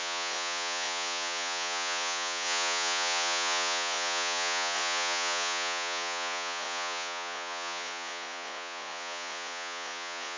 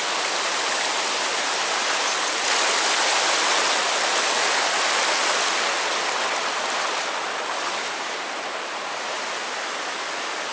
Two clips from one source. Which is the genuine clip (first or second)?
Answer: second